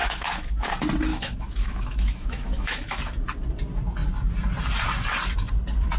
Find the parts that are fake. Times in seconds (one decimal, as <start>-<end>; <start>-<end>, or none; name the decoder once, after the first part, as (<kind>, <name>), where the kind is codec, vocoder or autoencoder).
0.0-0.7 (autoencoder, DAC-VAE); 1.1-3.0